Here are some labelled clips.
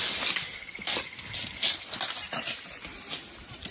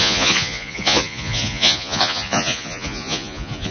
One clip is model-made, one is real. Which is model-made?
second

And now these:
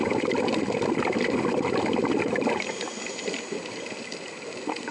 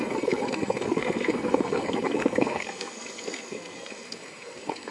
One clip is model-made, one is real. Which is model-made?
second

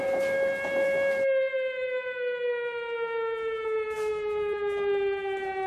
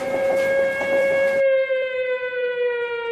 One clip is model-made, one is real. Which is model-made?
second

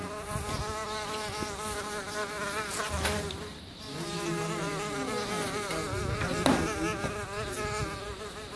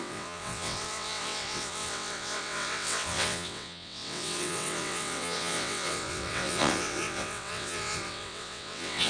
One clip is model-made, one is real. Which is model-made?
second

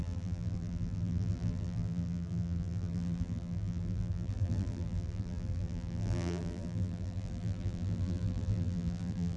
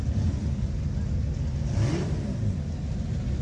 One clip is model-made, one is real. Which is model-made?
first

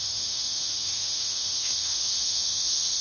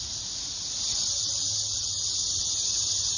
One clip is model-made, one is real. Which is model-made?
first